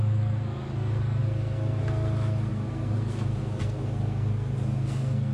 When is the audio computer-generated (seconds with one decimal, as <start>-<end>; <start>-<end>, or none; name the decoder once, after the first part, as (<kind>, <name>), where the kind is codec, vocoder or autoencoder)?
0.0-5.3 (codec, SNAC)